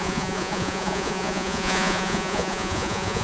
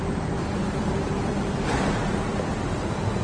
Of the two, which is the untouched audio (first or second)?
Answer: second